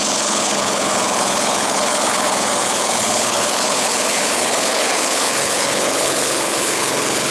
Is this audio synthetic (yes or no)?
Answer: yes